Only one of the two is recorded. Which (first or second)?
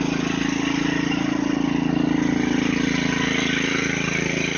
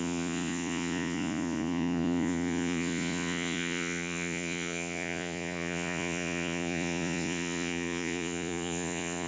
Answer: first